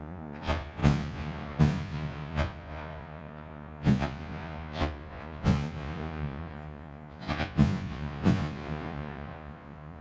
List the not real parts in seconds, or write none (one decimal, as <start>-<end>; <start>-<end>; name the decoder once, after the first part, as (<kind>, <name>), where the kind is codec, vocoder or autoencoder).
0.0-10.0 (vocoder, Vocos)